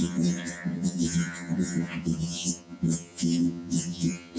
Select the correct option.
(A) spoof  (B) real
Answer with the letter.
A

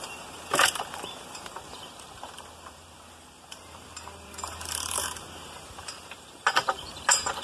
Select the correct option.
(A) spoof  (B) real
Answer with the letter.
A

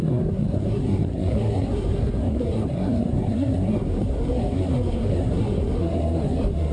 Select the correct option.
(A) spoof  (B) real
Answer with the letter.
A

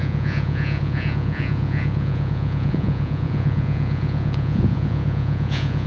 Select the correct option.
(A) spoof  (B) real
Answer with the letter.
A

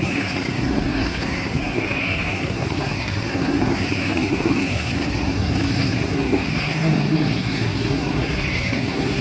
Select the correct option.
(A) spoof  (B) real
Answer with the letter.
A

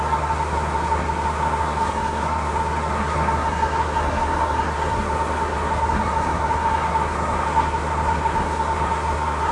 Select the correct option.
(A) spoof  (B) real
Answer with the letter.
A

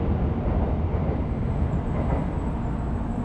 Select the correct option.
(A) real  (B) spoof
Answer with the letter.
A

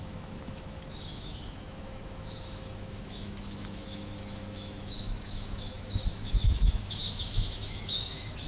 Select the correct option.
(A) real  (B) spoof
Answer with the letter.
B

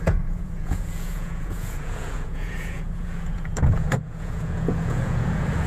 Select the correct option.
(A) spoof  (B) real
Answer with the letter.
A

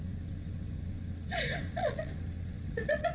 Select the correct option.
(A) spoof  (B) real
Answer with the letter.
A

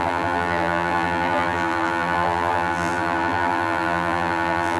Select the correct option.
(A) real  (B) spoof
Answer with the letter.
B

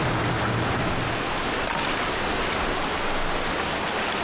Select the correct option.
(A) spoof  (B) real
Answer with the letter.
B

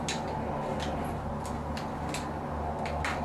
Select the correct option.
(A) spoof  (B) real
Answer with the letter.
B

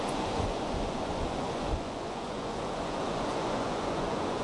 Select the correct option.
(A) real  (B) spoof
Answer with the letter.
B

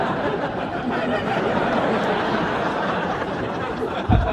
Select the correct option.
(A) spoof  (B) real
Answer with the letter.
A